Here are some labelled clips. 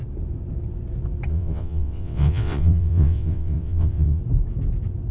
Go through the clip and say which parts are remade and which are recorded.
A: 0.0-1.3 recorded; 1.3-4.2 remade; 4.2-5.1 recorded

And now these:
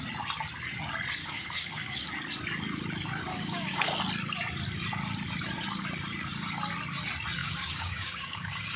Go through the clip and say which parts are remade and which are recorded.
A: 0.0-1.2 recorded; 1.2-2.1 remade; 2.1-3.3 recorded; 3.3-4.0 remade; 4.0-7.4 recorded; 7.4-8.8 remade

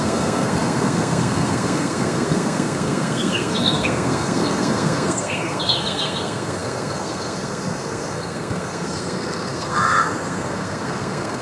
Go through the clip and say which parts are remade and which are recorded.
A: 0.0-11.4 remade